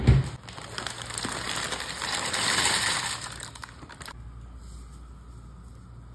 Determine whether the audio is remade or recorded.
recorded